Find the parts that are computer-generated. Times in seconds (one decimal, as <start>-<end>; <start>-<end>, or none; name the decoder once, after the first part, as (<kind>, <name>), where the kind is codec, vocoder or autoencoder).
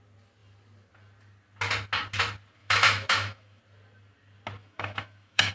2.6-3.6 (autoencoder, DAC-VAE); 4.6-5.5